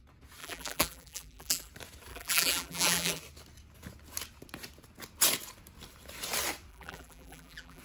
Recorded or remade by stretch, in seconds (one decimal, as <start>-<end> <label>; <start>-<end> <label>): 0.0-0.4 recorded; 0.4-1.7 remade; 1.7-2.1 recorded; 2.1-3.2 remade; 3.2-6.7 recorded; 6.7-7.8 remade